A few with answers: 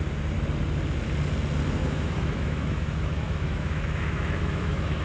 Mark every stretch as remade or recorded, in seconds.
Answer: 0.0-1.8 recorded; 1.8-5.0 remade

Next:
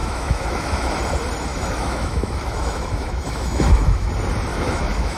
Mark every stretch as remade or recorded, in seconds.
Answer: 0.0-0.9 remade; 0.9-1.5 recorded; 1.5-4.1 remade; 4.1-4.5 recorded; 4.5-5.2 remade